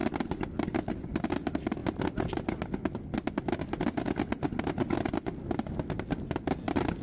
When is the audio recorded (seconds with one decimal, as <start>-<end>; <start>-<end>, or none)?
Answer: 0.9-7.0